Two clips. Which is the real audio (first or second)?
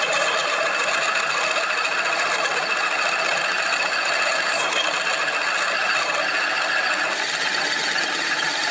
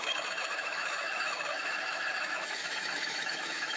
first